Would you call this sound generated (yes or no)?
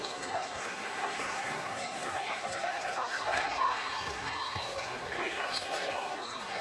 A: yes